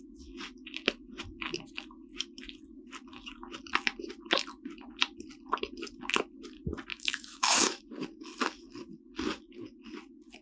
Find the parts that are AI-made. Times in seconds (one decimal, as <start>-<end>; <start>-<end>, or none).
6.9-7.8